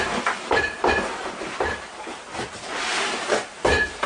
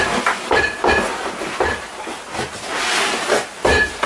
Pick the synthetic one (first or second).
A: first